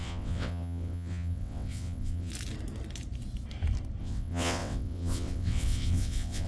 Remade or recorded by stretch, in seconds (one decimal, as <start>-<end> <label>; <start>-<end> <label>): 0.0-2.3 remade; 2.3-4.0 recorded; 4.0-6.5 remade